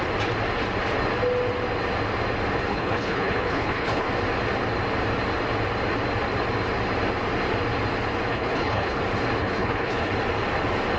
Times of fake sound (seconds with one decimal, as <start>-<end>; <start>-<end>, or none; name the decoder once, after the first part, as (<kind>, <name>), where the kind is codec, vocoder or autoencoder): 2.7-4.1 (codec, HILCodec); 8.3-9.0; 9.4-10.1